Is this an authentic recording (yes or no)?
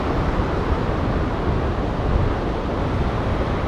yes